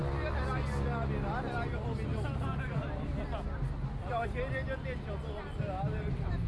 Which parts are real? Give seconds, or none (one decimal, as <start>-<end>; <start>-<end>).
0.0-6.5